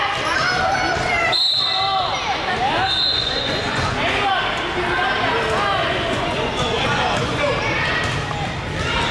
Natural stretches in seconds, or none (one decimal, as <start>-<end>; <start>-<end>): 0.0-3.1; 4.3-5.8; 7.4-9.1